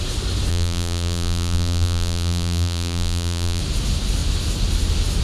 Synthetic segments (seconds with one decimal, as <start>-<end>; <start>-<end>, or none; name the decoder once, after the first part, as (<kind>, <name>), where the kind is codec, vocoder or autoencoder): 0.5-3.6 (vocoder, BigVGAN v2)